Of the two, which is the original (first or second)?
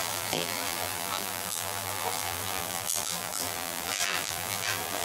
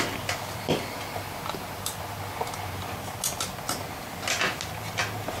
second